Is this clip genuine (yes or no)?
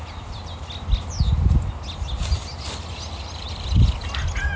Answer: yes